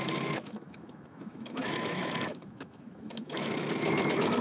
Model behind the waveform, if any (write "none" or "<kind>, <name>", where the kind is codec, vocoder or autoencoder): autoencoder, DAC-VAE